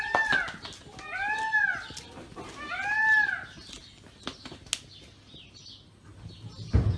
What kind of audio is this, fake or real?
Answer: real